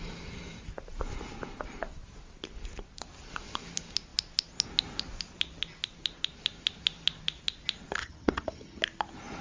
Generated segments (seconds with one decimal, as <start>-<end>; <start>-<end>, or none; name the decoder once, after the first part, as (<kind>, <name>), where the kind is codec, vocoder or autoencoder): 8.0-8.8 (vocoder, HiFi-GAN)